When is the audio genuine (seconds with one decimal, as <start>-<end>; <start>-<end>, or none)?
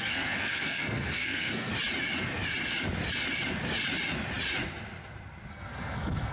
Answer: 1.7-5.5